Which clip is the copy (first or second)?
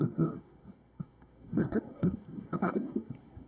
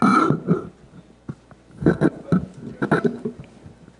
first